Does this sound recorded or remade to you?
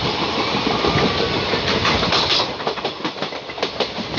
recorded